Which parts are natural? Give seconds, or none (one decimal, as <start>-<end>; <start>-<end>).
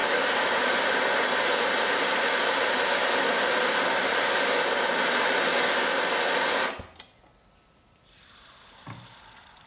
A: 0.0-9.7